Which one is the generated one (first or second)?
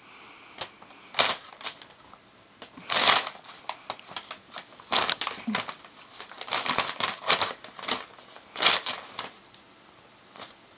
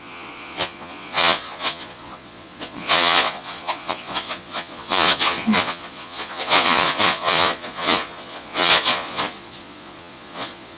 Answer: second